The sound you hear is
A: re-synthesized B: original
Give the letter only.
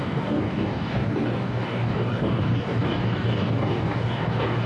A